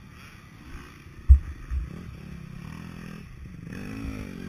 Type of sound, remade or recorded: recorded